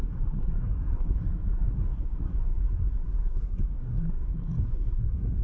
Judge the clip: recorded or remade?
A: remade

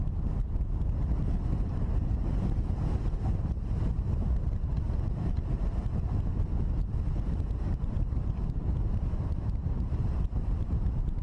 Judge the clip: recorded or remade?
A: recorded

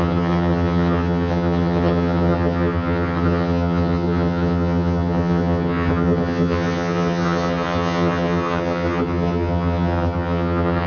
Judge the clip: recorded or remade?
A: remade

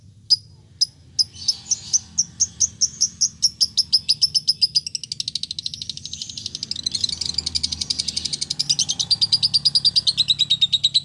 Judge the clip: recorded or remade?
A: recorded